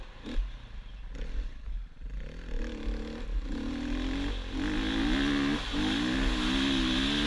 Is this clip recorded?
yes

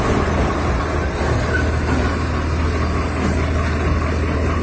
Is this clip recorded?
yes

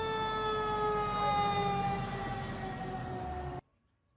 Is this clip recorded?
yes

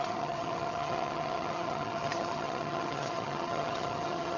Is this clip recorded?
no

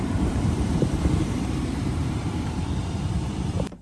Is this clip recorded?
no